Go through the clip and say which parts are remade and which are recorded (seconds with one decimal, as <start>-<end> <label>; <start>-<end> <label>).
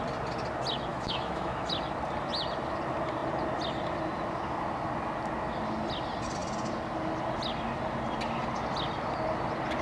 0.0-0.9 recorded; 0.9-1.7 remade; 1.7-9.8 recorded